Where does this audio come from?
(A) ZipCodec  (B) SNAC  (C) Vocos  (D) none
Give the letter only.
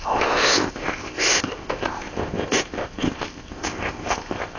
A